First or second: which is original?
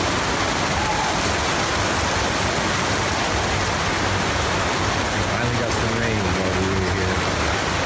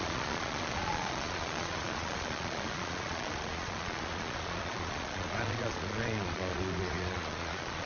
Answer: first